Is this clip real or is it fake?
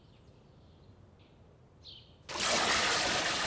real